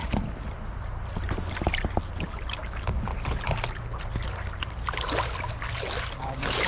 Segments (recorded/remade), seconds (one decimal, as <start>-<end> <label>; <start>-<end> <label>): 0.0-2.5 recorded; 2.5-3.1 remade; 3.1-6.2 recorded; 6.2-6.7 remade